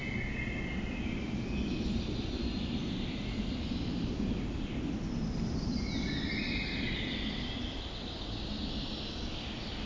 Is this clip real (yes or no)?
yes